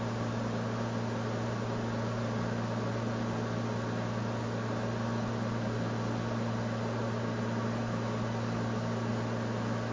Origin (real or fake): real